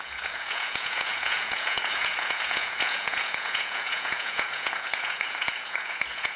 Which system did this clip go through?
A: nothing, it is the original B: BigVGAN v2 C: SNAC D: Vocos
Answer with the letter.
D